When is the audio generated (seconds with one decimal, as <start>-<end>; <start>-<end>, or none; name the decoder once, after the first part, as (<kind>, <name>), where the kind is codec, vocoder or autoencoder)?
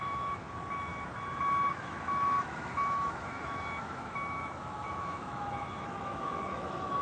0.0-0.9 (autoencoder, DAC-VAE); 1.7-7.0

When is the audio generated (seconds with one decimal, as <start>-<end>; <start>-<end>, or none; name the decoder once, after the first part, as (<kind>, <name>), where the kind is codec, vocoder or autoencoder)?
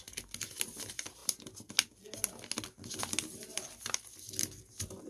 none